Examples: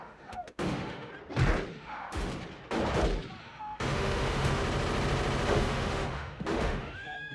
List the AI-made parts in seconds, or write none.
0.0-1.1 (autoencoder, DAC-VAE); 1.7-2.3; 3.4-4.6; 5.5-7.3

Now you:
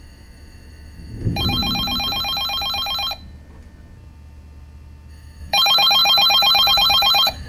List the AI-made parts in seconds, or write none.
0.0-1.6 (autoencoder, DAC-VAE); 5.1-7.5